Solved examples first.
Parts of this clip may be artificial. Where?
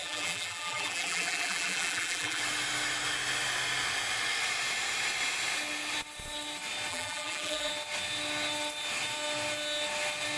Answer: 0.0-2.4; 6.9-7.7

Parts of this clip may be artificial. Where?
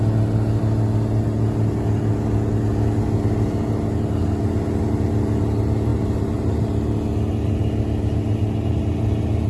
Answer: 5.9-6.6